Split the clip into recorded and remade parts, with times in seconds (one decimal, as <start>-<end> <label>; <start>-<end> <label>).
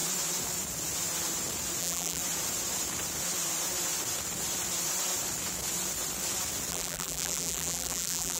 0.0-1.8 recorded; 1.8-2.2 remade; 2.2-6.7 recorded; 6.7-8.4 remade